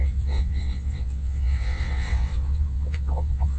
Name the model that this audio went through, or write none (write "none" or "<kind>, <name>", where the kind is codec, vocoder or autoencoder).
vocoder, WaveNeXt